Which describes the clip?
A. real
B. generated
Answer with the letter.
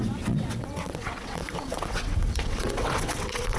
B